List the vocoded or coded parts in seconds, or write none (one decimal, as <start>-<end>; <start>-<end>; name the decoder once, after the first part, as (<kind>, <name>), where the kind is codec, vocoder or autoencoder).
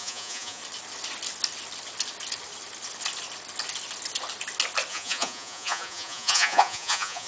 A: 0.0-0.6 (vocoder, Vocos); 4.9-7.3